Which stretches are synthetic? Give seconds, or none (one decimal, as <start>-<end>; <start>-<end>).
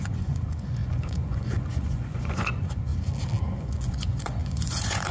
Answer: 0.0-2.9; 3.5-5.1